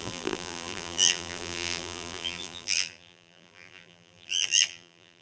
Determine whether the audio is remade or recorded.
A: remade